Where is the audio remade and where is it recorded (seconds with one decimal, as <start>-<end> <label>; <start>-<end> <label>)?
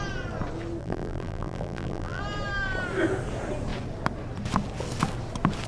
0.0-0.8 recorded; 0.8-2.2 remade; 2.2-5.7 recorded